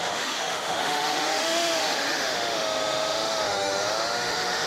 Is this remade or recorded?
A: remade